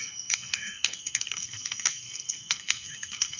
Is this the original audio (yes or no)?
no